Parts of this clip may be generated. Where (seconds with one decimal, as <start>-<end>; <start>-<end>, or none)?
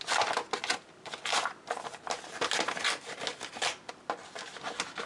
none